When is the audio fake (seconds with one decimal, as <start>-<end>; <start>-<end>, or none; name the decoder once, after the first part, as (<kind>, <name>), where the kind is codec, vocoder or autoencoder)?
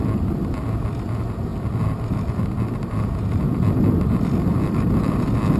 none